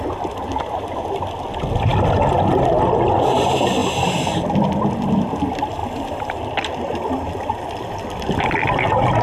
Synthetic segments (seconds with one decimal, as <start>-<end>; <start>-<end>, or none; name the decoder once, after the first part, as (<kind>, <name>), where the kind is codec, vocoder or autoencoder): none